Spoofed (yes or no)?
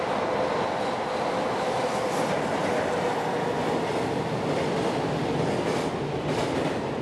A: no